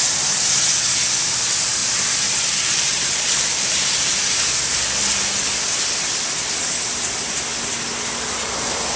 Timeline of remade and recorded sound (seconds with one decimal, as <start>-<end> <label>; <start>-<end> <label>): 0.0-1.8 recorded; 1.8-4.2 remade; 4.2-9.0 recorded